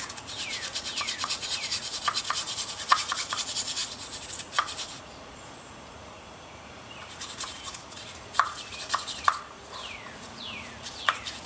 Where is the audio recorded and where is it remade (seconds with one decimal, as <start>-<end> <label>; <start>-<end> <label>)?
0.0-11.5 remade